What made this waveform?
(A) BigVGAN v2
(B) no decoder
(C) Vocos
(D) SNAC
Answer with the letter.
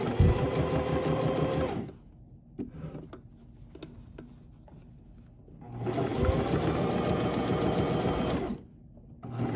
B